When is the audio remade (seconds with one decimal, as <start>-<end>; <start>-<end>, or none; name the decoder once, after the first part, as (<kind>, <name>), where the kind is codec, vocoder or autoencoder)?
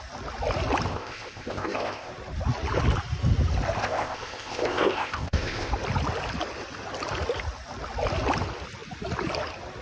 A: 0.9-2.1 (codec, ZipCodec); 3.8-5.7